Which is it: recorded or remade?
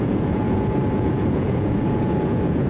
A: remade